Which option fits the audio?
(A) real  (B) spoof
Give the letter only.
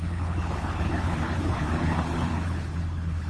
B